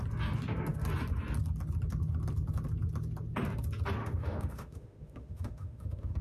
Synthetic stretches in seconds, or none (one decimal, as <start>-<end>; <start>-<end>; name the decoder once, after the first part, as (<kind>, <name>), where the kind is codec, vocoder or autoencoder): 4.0-6.2 (autoencoder, DAC-VAE)